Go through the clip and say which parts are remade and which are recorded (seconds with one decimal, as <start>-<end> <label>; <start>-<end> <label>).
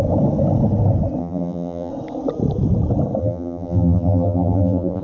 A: 0.0-1.2 recorded; 1.2-1.9 remade; 1.9-3.2 recorded; 3.2-5.0 remade